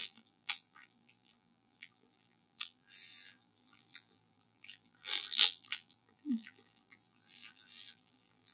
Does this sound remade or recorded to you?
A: remade